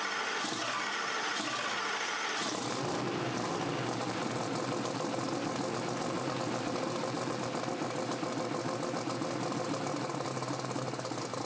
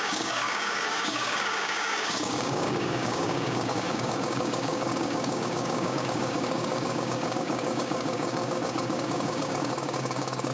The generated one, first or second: second